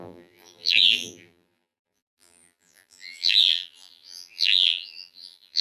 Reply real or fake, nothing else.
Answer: fake